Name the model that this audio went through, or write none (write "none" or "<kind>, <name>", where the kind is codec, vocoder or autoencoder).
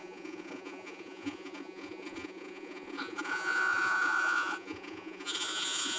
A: vocoder, Vocos